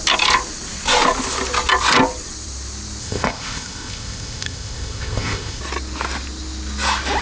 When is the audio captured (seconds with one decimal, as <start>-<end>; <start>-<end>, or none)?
0.0-3.0; 5.6-7.2